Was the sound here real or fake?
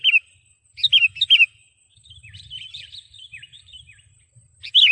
real